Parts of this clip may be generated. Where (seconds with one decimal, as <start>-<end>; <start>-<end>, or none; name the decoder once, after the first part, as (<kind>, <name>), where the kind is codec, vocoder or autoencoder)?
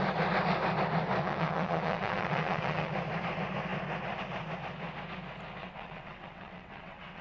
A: 1.2-2.9 (vocoder, WaveNeXt); 5.6-7.2